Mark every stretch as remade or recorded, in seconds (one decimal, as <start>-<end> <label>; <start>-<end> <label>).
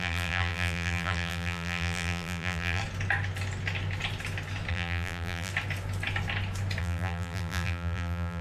0.0-2.8 remade; 2.8-4.7 recorded; 4.7-5.5 remade; 5.5-6.8 recorded; 6.8-8.4 remade